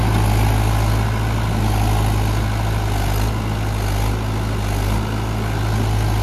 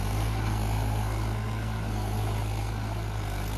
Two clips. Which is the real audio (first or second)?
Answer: first